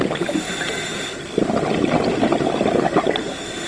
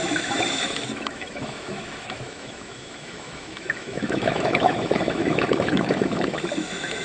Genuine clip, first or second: first